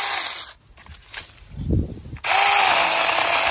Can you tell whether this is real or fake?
real